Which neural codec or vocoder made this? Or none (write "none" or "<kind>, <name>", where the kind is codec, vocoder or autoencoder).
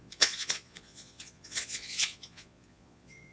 vocoder, Vocos